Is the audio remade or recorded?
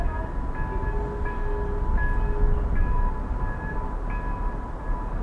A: recorded